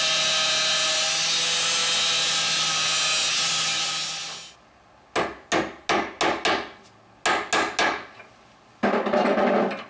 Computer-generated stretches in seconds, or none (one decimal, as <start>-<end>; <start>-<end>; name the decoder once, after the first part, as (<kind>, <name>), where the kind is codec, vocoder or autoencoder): none